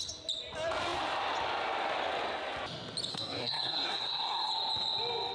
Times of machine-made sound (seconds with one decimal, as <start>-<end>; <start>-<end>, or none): 3.1-4.5